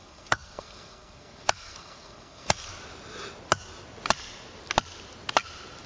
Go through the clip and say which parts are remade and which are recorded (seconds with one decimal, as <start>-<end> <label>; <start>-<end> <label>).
0.0-2.7 remade; 2.7-5.9 recorded